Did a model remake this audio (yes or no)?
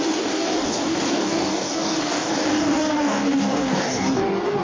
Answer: yes